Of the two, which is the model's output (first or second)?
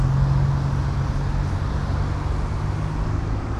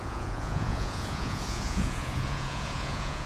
second